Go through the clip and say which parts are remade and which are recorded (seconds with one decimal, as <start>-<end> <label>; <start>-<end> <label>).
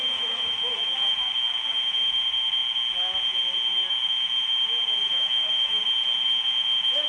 0.0-1.3 remade; 1.3-5.0 recorded; 5.0-5.8 remade; 5.8-7.1 recorded